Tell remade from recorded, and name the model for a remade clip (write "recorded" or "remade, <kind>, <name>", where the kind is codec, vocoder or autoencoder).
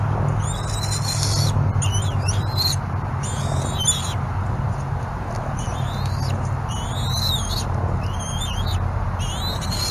recorded